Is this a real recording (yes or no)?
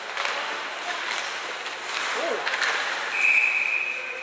yes